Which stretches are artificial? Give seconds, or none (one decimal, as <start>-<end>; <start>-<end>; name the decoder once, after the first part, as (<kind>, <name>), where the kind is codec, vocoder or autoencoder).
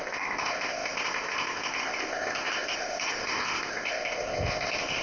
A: 0.0-5.0 (codec, ZipCodec)